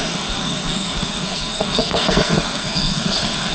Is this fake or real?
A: fake